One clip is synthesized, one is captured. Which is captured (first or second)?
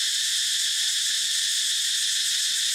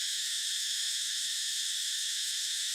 first